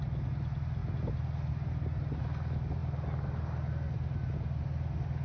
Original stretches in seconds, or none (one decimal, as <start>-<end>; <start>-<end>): 0.0-5.2